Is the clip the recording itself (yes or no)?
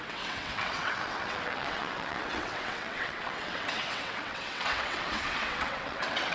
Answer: no